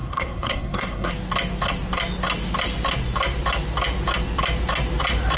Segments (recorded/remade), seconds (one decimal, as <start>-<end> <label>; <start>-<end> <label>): 0.0-1.1 remade; 1.1-5.4 recorded